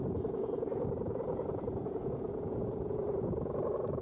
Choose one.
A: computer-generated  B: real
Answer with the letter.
A